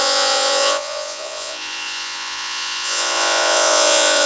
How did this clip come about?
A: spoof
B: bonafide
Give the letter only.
A